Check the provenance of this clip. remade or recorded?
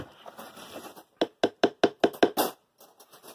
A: recorded